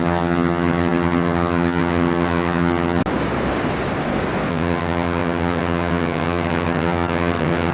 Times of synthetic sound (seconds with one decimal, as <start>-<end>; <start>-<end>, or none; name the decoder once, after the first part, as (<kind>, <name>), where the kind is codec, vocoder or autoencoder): 0.0-3.0 (vocoder, HiFi-GAN); 4.5-7.7